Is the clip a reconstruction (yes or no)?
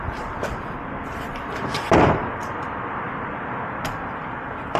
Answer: no